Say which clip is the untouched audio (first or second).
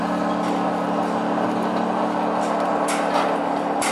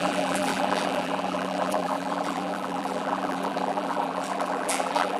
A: first